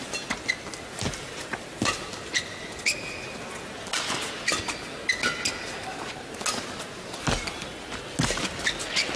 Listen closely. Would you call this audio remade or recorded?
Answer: recorded